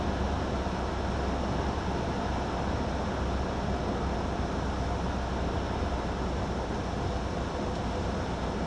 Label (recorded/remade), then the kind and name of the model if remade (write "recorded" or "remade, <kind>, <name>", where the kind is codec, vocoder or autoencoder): recorded